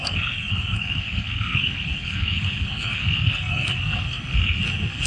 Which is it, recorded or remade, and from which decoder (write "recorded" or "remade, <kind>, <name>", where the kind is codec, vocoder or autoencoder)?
remade, codec, SNAC